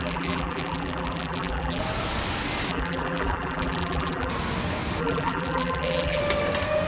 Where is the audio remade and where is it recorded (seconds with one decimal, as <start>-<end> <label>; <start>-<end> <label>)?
0.0-1.8 remade; 1.8-2.7 recorded; 2.7-4.3 remade; 4.3-5.0 recorded; 5.0-6.2 remade; 6.2-6.9 recorded